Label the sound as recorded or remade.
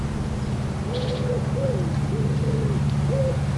remade